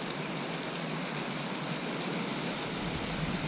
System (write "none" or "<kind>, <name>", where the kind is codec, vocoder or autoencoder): none